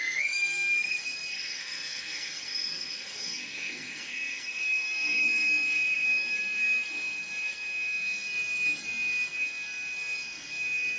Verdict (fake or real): fake